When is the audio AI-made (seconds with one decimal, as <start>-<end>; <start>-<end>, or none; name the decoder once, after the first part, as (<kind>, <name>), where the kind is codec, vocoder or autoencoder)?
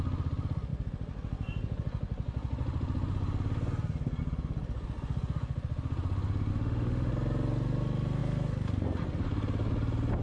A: 6.5-7.1 (autoencoder, DAC-VAE)